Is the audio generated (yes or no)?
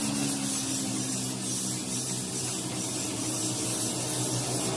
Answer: no